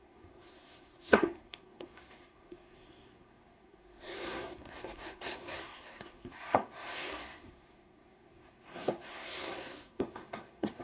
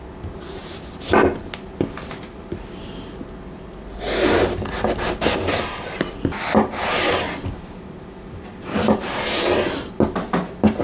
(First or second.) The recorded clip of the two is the second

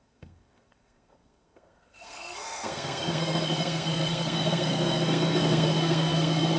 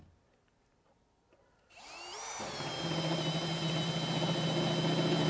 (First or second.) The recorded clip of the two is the second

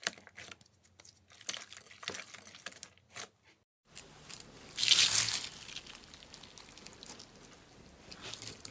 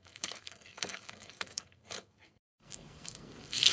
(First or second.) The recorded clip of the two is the first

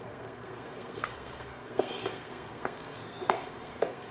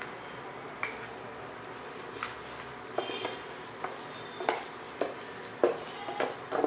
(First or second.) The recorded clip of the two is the second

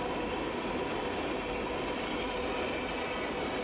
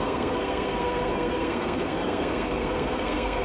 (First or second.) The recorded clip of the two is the first